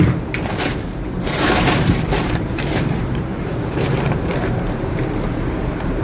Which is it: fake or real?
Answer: fake